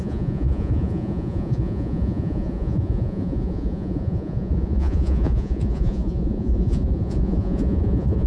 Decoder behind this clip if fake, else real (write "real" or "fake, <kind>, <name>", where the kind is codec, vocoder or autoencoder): fake, vocoder, Vocos